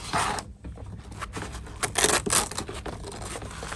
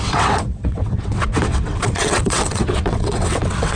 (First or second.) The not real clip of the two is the second